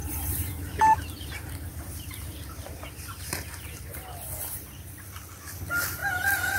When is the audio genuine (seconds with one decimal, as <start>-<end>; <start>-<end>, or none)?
3.8-6.0